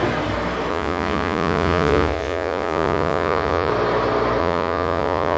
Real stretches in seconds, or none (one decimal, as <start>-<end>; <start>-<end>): 0.0-0.7; 3.7-4.4